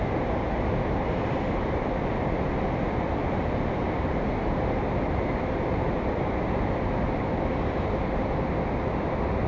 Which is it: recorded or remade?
recorded